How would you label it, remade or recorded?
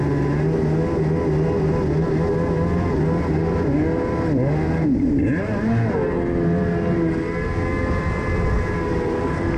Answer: recorded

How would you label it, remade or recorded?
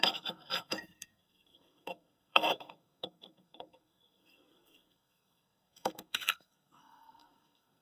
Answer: remade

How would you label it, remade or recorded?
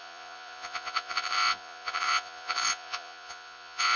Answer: remade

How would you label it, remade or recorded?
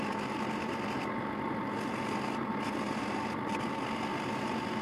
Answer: recorded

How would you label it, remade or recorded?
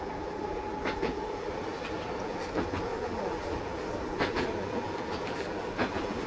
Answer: remade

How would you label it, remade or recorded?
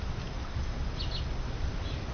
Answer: recorded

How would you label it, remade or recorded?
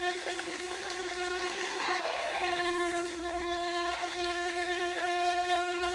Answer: remade